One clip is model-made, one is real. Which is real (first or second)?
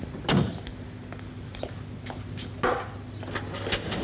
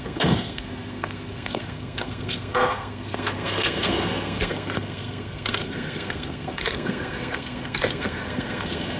first